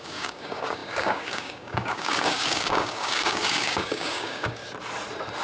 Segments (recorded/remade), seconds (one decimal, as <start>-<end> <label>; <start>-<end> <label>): 0.0-4.6 remade; 4.6-5.4 recorded